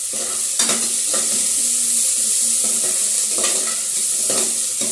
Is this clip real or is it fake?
real